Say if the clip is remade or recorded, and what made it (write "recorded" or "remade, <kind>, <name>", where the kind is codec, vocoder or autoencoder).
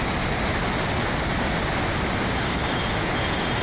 recorded